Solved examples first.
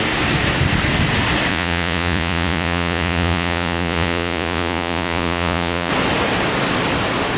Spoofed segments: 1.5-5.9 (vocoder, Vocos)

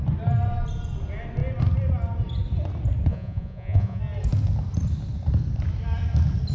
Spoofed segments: 3.1-4.0 (vocoder, Vocos)

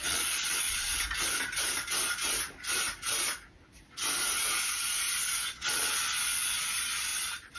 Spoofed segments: 0.0-0.9 (vocoder, Vocos); 5.5-7.1